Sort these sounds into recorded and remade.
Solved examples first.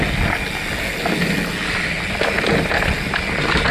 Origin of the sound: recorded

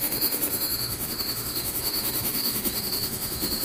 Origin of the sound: remade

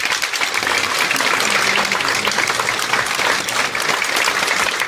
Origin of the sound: recorded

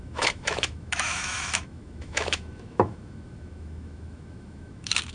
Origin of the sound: remade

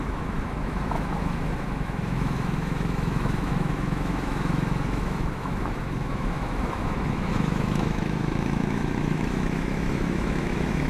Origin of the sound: remade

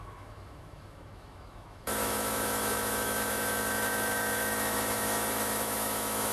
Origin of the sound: remade